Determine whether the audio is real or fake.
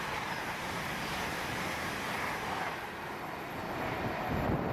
real